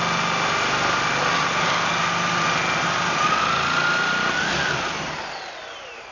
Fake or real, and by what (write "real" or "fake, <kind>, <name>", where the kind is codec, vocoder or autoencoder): real